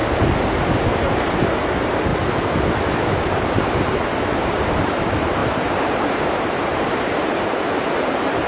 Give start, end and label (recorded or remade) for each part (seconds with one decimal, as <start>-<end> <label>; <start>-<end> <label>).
0.0-0.8 recorded; 0.8-2.1 remade; 2.1-3.0 recorded; 3.0-8.5 remade